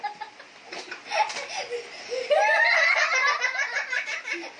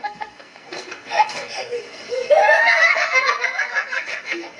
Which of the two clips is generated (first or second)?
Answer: second